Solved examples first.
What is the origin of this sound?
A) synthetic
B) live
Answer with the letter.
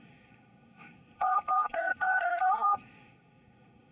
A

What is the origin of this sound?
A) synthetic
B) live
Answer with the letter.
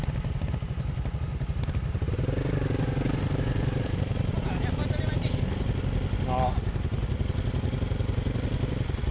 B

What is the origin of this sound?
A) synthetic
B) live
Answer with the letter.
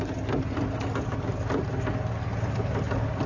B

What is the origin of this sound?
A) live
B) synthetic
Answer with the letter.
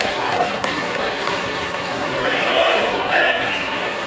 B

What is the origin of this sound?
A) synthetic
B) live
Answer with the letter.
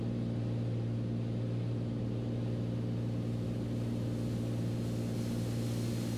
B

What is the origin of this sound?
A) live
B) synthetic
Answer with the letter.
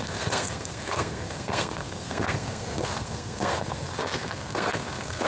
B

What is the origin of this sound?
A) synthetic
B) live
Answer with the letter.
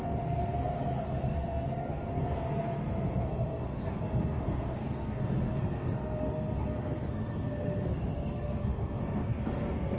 A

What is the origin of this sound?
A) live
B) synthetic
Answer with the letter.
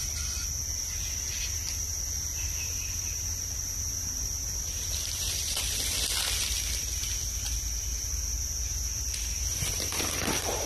A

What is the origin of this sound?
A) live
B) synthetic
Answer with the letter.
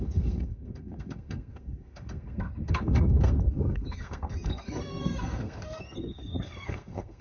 B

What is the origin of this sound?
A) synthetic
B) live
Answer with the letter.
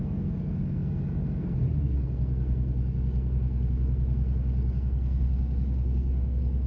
A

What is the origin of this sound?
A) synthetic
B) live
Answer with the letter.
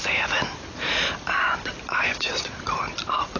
B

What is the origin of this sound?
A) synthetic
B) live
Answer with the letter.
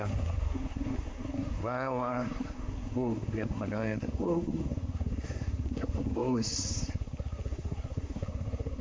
A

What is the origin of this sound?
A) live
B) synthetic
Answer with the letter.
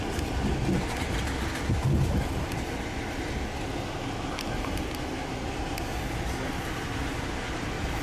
A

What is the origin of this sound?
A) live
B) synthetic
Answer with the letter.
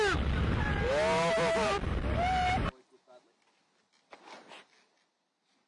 A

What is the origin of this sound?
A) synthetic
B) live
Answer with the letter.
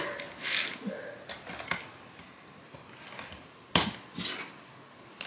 B